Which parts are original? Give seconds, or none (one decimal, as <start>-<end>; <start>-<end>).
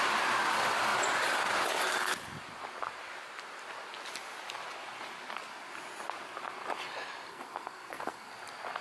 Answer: 0.0-7.3; 8.3-8.8